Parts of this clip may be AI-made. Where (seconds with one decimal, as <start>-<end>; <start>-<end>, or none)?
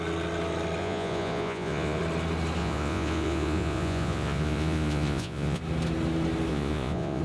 0.8-2.0; 2.6-5.6; 6.5-7.2